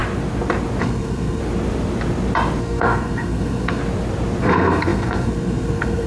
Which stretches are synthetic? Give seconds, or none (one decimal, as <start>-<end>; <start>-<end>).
0.8-1.4; 2.6-3.8; 4.4-6.1